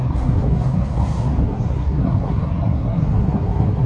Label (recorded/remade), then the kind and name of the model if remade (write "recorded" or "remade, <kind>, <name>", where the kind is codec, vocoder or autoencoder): remade, codec, SNAC